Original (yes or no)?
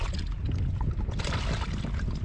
yes